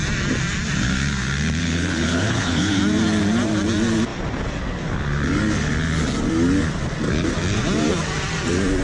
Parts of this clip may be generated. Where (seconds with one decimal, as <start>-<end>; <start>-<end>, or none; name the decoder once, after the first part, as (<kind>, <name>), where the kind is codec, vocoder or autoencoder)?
1.6-2.8 (codec, HILCodec)